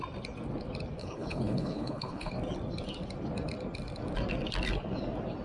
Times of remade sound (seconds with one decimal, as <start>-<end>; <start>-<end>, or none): 1.0-2.3